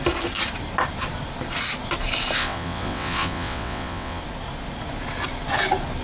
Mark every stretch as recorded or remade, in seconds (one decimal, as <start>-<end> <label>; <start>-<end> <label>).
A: 0.0-2.4 recorded; 2.4-4.2 remade; 4.2-6.0 recorded